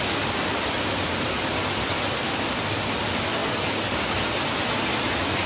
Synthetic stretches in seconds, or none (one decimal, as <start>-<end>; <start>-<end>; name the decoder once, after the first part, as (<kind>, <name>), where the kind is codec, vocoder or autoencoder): none